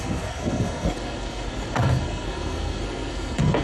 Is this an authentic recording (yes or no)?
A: no